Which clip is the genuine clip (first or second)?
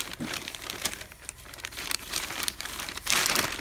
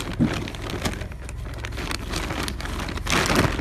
second